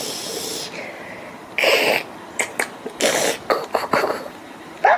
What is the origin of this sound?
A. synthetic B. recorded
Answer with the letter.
B